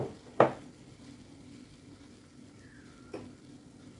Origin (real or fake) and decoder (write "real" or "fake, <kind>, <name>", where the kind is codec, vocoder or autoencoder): real